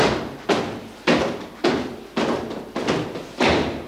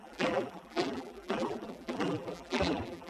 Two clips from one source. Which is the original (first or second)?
first